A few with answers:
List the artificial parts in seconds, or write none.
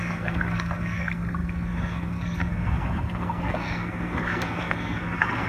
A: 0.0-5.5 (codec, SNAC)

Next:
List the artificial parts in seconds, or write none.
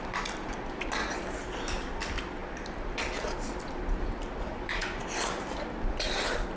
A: 4.5-5.0 (vocoder, Vocos)